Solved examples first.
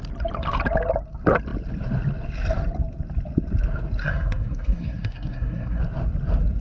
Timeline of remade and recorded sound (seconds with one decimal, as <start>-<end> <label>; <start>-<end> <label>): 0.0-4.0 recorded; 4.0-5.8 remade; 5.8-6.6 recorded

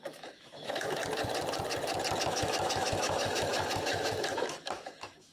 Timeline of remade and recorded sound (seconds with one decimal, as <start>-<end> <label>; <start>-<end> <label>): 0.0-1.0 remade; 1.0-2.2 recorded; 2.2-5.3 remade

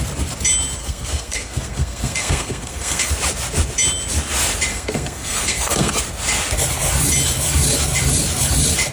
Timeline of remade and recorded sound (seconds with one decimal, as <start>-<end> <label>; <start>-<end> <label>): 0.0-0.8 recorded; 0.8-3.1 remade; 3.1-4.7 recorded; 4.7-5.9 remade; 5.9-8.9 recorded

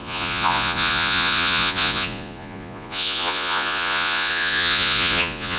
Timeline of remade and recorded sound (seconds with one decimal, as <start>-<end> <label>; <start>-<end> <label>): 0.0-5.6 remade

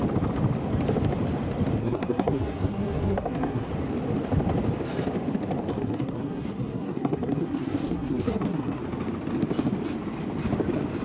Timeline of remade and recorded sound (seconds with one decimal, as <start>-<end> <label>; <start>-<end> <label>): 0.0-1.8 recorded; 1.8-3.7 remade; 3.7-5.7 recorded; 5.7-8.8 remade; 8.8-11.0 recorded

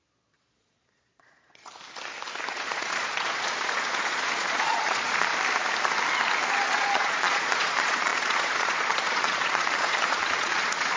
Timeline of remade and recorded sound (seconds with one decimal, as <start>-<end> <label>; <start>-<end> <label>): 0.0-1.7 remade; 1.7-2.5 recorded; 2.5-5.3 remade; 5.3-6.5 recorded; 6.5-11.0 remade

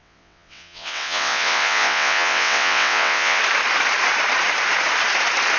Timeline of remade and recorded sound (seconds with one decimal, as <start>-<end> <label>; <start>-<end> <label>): 0.0-3.4 remade; 3.4-5.6 recorded

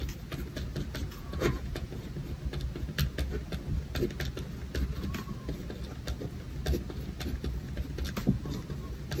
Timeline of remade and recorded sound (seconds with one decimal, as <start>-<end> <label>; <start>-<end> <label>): 0.0-1.0 recorded; 1.0-2.0 remade; 2.0-9.2 recorded